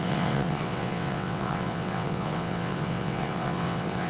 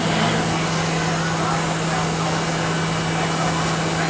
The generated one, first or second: first